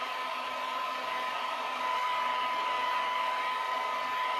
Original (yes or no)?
no